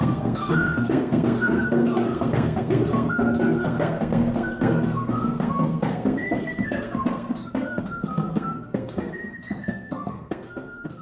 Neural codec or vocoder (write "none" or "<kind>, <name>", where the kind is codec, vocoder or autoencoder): codec, SNAC